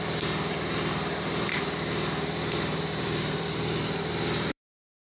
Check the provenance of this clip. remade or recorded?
remade